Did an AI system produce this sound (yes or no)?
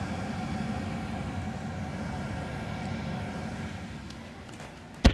no